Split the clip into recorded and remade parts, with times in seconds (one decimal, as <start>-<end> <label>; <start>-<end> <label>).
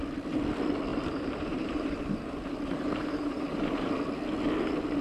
0.0-0.9 recorded; 0.9-3.9 remade; 3.9-5.0 recorded